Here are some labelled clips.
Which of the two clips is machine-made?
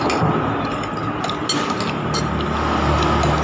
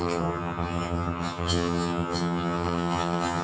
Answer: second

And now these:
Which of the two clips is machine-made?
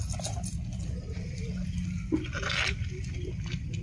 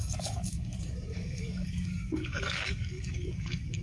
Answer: second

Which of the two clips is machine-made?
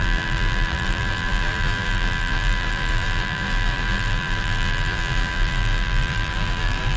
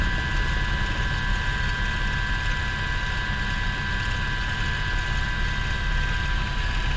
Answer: first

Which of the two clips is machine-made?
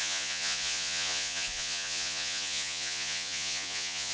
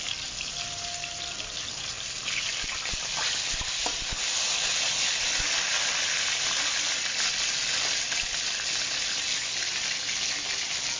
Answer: first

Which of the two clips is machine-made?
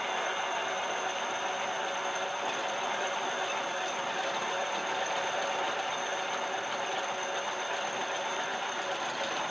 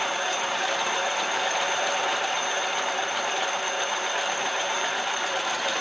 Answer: second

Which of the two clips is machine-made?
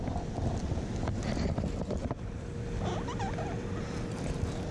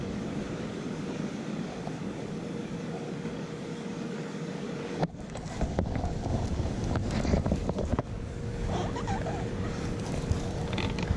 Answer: second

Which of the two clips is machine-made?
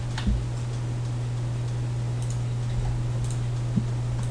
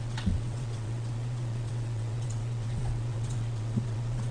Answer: second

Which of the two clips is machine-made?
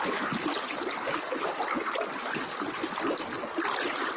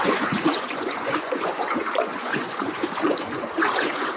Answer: second